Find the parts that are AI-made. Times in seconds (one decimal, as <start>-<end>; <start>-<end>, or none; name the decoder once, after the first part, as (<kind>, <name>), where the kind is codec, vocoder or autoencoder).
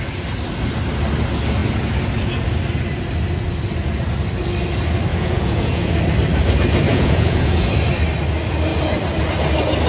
5.1-5.9 (vocoder, Vocos); 6.9-7.7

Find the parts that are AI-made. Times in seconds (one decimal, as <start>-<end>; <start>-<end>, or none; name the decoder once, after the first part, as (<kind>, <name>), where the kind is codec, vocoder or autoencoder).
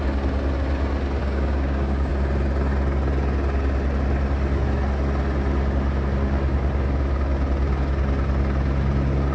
1.2-2.1 (codec, DAC)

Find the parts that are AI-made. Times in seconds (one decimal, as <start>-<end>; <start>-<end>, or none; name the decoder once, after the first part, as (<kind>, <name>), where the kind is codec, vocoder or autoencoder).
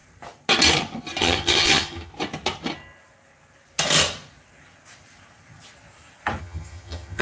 1.2-2.1 (vocoder, HiFi-GAN); 6.4-7.2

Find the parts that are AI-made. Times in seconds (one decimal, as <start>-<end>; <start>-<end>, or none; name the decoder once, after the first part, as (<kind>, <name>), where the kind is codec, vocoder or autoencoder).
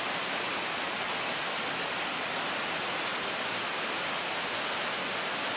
none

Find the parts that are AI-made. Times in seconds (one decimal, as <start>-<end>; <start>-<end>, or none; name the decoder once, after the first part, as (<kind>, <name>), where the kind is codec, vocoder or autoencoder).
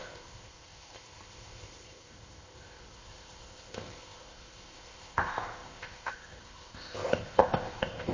0.0-8.1 (codec, ZipCodec)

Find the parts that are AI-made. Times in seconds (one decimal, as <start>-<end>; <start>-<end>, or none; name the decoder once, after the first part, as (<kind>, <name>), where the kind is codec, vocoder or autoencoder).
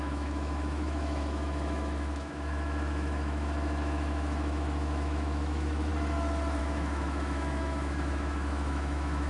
0.0-5.9 (autoencoder, DAC-VAE); 6.6-9.3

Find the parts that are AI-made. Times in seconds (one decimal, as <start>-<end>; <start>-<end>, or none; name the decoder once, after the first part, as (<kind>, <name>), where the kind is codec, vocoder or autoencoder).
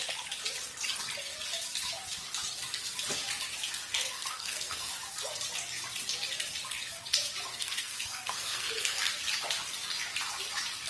3.9-4.9 (codec, SNAC); 7.5-9.1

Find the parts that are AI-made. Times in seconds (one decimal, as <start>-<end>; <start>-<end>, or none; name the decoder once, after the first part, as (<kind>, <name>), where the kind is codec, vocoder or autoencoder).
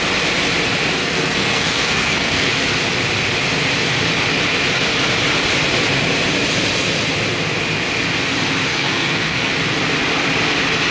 1.0-2.5 (codec, SNAC); 8.7-9.5